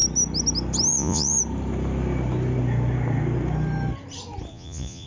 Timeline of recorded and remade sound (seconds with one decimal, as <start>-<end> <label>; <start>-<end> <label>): 0.0-0.9 recorded; 0.9-1.4 remade; 1.4-4.5 recorded; 4.5-5.1 remade